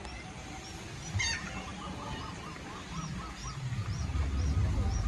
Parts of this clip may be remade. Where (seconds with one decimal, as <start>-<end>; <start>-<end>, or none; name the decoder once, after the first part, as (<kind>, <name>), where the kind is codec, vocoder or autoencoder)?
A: none